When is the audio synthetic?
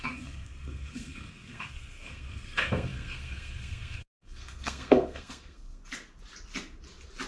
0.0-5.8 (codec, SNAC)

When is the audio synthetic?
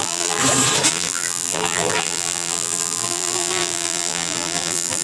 0.0-0.4 (vocoder, BigVGAN v2); 0.9-5.0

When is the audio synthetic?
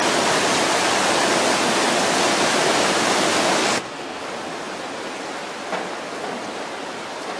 3.6-4.2 (codec, SNAC)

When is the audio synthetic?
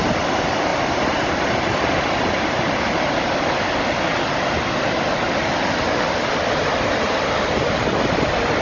none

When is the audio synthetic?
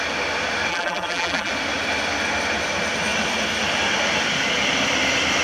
0.7-1.5 (vocoder, BigVGAN v2)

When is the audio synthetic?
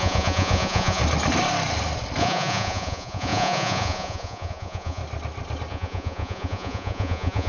0.0-1.0 (vocoder, Vocos); 2.2-5.0; 5.7-7.5